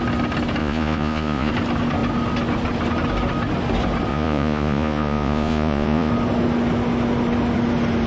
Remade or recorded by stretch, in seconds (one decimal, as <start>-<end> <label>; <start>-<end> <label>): 0.0-0.6 recorded; 0.6-1.5 remade; 1.5-4.1 recorded; 4.1-6.1 remade; 6.1-8.1 recorded